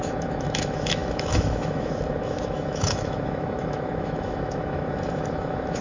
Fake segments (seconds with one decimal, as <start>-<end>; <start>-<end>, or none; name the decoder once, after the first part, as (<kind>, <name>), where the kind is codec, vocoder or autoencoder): 0.0-5.8 (autoencoder, DAC-VAE)